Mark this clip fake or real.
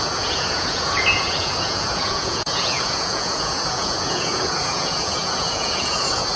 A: fake